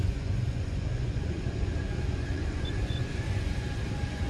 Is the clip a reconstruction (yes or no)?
yes